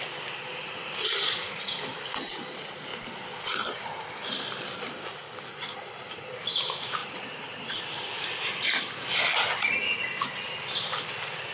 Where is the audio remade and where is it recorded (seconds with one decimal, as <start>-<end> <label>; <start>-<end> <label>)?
0.0-11.5 recorded